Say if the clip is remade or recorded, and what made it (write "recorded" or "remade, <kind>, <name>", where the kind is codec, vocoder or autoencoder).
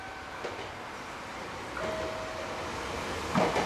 recorded